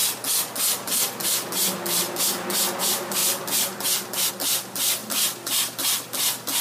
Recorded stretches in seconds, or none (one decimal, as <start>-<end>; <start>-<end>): 0.0-2.8; 3.2-4.3